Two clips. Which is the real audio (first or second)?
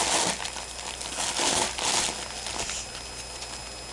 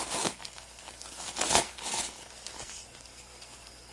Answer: first